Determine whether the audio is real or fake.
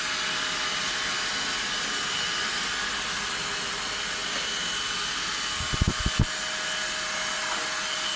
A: real